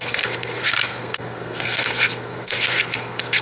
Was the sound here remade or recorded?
remade